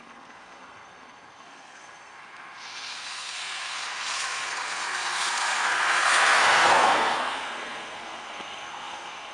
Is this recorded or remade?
remade